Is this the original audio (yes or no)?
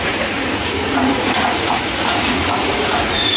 no